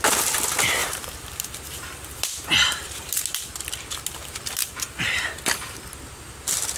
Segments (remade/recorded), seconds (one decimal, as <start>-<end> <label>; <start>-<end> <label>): 0.0-0.8 recorded; 0.8-3.4 remade; 3.4-6.8 recorded